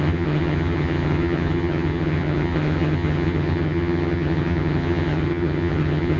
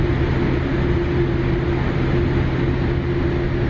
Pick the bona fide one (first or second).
second